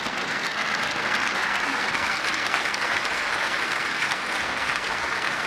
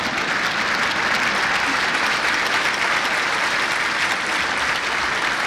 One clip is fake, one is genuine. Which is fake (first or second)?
first